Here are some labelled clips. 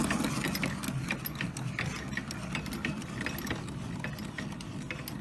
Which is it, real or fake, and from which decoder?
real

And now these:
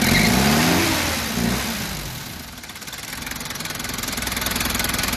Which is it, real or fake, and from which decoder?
real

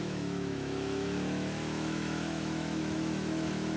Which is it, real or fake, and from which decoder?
fake, autoencoder, DAC-VAE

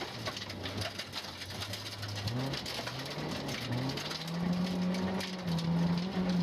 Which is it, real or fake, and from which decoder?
real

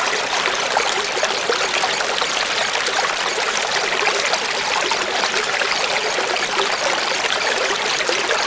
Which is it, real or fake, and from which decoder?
real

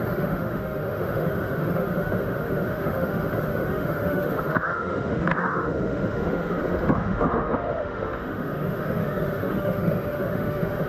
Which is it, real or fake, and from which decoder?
fake, autoencoder, DAC-VAE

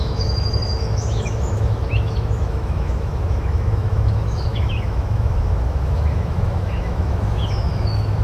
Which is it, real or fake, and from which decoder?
fake, autoencoder, DAC-VAE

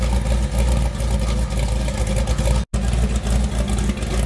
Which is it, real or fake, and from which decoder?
real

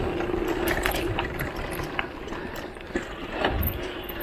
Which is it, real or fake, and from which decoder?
real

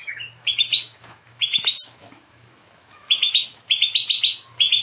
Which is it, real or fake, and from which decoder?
fake, autoencoder, DAC-VAE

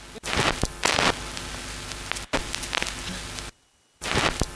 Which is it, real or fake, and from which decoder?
real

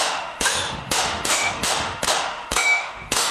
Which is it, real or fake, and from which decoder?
fake, autoencoder, DAC-VAE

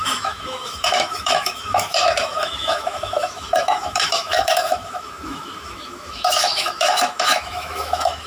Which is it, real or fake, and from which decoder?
fake, autoencoder, DAC-VAE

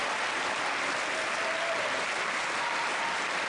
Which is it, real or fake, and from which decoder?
real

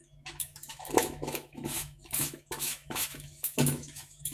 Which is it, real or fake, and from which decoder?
fake, autoencoder, DAC-VAE